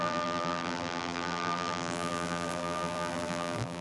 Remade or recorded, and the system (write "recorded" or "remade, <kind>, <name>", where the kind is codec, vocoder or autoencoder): remade, vocoder, BigVGAN v2